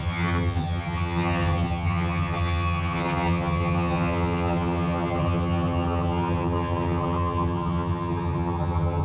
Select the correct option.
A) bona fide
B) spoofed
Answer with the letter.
B